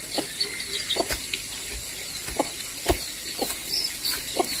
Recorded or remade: recorded